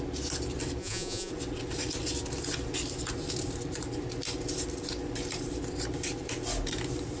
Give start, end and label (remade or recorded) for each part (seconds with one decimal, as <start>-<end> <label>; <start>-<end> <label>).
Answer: 0.0-0.8 recorded; 0.8-1.3 remade; 1.3-7.2 recorded